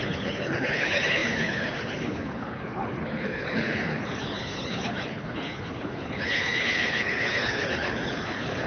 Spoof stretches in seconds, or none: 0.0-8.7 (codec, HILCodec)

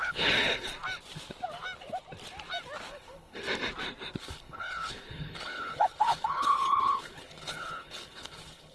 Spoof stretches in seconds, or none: 0.0-0.7 (codec, HILCodec); 2.9-3.4; 4.2-8.7

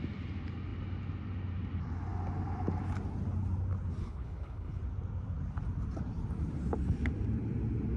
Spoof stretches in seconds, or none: 4.0-4.8 (codec, HILCodec)

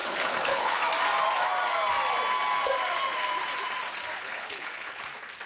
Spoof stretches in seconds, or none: 0.0-0.8 (codec, HILCodec); 4.2-5.0

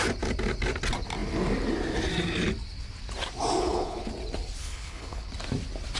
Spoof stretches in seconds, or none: 3.6-4.1 (codec, HILCodec); 4.6-5.3